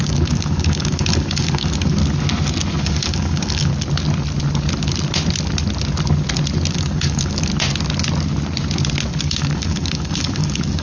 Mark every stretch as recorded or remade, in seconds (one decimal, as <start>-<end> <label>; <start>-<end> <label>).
0.0-2.0 remade; 2.0-2.8 recorded; 2.8-3.7 remade; 3.7-6.7 recorded; 6.7-7.5 remade; 7.5-9.2 recorded; 9.2-10.8 remade